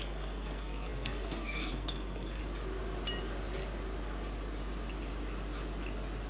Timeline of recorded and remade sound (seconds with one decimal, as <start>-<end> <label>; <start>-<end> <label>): 0.0-2.4 remade; 2.4-6.3 recorded